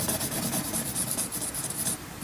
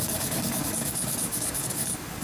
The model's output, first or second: second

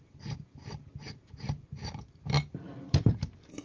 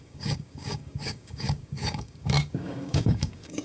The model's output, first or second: second